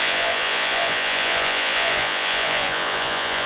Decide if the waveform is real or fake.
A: fake